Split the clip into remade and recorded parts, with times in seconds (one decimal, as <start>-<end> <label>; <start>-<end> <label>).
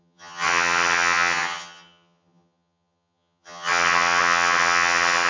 0.0-5.3 remade